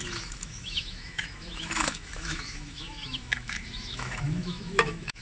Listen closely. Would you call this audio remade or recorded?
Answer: remade